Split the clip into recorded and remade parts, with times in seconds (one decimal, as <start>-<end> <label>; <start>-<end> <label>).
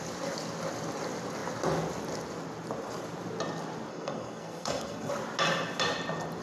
0.0-3.9 recorded; 3.9-5.1 remade; 5.1-6.4 recorded